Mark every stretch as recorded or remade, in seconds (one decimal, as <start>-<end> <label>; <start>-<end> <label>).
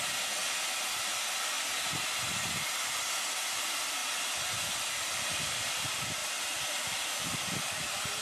0.0-0.4 remade; 0.4-2.0 recorded; 2.0-4.0 remade; 4.0-5.0 recorded; 5.0-8.2 remade